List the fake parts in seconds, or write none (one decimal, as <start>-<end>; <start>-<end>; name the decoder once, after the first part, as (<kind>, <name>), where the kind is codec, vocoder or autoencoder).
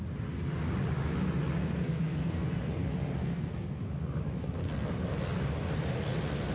1.6-2.6 (codec, SNAC); 3.2-3.9